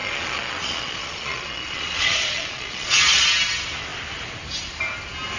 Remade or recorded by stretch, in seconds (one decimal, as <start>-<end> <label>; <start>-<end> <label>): 0.0-3.2 remade; 3.2-5.4 recorded